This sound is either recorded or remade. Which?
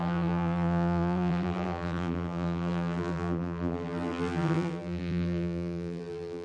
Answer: remade